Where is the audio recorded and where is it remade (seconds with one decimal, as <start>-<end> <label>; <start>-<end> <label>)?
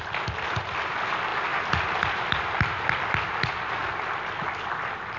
0.0-5.2 recorded